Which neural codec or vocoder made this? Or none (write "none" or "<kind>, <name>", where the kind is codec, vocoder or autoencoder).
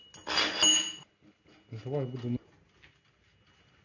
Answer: none